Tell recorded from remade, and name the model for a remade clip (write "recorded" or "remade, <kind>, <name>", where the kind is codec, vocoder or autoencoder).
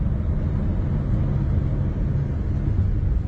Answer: recorded